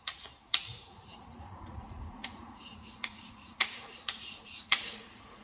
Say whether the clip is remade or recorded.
remade